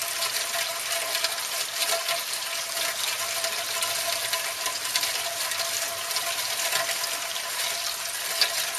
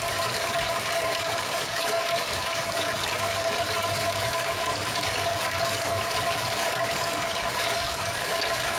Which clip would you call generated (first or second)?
second